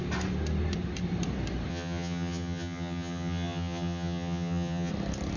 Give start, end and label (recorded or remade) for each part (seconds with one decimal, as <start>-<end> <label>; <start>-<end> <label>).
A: 0.0-1.7 recorded; 1.7-4.9 remade; 4.9-5.4 recorded